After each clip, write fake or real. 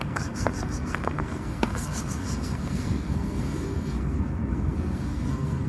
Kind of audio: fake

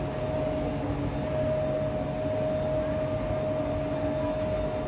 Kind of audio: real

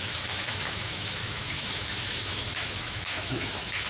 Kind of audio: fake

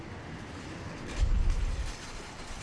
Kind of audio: real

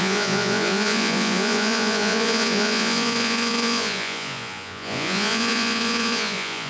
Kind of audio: fake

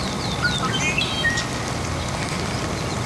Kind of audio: real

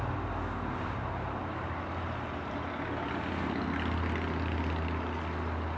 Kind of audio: real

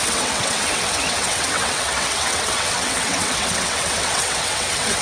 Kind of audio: fake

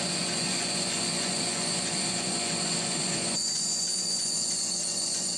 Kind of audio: fake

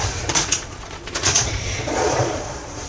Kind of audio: fake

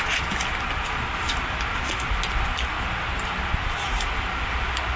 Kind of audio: real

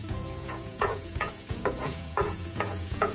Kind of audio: fake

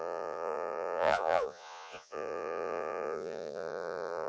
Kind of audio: fake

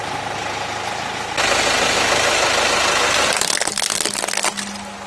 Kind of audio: real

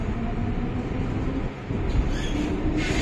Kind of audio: real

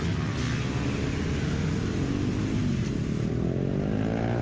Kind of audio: real